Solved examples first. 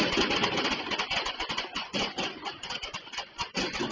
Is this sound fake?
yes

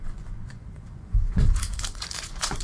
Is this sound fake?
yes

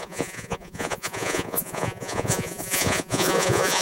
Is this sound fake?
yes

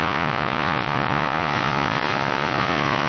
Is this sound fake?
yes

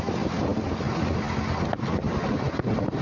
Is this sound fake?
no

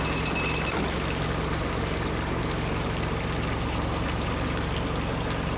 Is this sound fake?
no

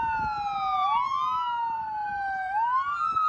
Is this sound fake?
no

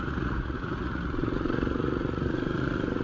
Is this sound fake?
yes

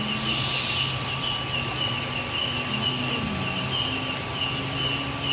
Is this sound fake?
no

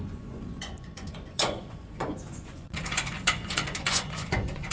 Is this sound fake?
yes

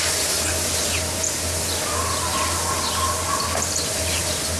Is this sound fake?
no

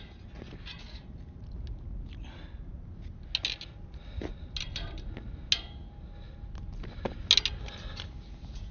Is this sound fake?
no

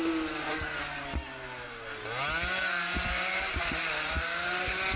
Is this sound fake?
no